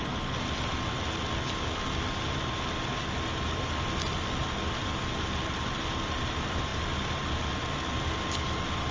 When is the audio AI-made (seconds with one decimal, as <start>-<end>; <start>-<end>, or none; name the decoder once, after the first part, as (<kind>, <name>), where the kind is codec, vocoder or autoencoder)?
none